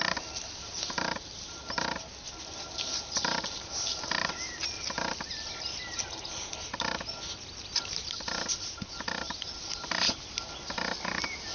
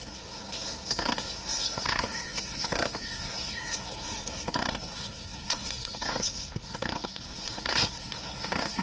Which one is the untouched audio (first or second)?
first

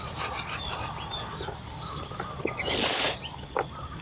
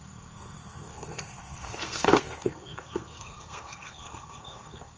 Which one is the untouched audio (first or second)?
first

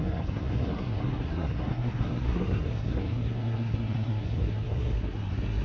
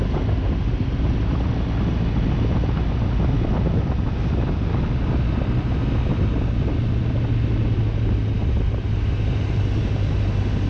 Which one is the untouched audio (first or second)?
second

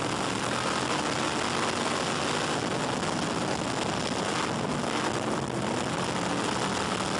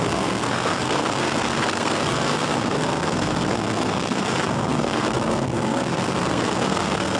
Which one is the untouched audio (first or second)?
first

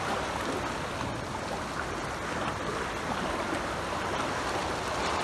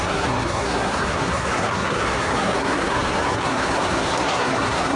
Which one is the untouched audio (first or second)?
first